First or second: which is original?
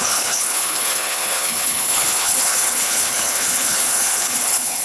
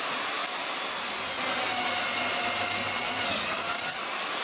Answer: second